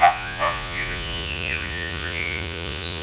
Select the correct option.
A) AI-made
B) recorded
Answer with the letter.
A